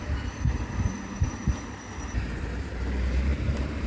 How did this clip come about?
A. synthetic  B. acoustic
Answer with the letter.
A